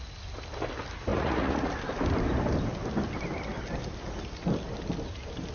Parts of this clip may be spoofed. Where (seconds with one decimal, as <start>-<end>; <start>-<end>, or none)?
1.1-1.7